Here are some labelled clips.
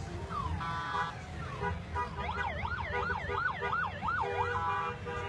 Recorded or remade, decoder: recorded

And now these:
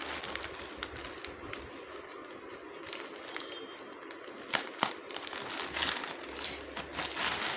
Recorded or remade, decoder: recorded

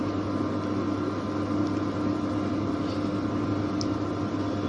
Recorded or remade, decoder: recorded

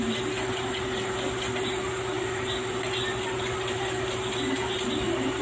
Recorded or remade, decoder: recorded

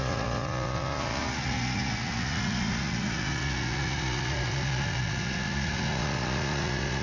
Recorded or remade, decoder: remade, vocoder, Vocos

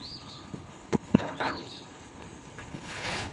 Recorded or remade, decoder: remade, codec, HILCodec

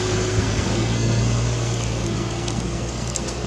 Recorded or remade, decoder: remade, codec, SNAC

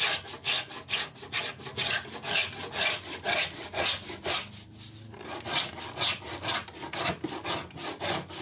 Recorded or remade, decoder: recorded